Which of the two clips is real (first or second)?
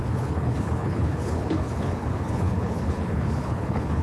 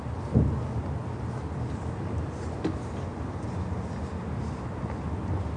second